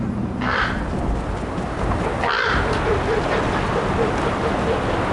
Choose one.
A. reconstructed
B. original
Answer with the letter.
B